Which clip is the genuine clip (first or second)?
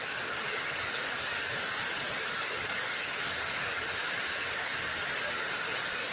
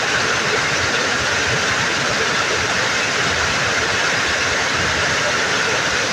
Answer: second